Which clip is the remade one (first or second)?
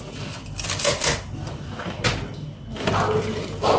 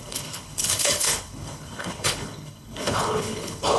second